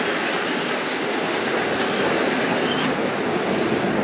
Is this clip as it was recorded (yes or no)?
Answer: yes